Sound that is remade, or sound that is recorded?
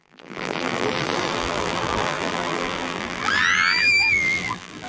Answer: remade